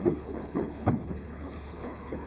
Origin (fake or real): fake